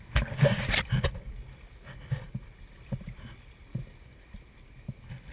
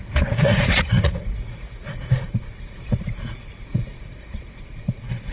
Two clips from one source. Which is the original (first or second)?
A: first